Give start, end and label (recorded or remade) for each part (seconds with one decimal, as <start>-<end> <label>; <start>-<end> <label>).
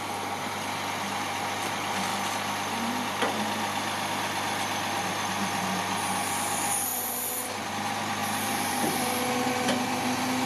0.0-2.1 recorded; 2.1-3.2 remade; 3.2-6.9 recorded; 6.9-7.7 remade; 7.7-8.2 recorded; 8.2-8.7 remade; 8.7-10.5 recorded